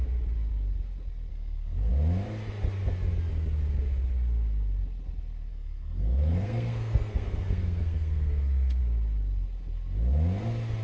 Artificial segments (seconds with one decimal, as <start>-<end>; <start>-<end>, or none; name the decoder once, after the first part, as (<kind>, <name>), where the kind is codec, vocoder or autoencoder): 1.3-1.9 (codec, SNAC); 5.5-8.8